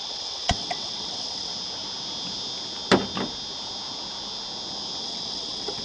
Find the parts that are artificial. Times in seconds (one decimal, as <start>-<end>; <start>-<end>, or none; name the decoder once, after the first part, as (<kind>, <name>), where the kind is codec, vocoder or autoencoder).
0.0-1.5 (vocoder, WaveNeXt); 5.0-5.8